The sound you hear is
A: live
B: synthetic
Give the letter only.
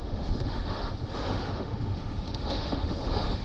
B